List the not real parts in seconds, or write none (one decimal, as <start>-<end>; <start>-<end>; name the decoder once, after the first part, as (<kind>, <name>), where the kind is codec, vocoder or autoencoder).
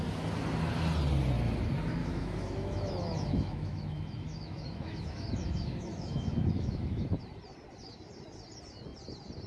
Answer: 2.0-7.2 (autoencoder, DAC-VAE)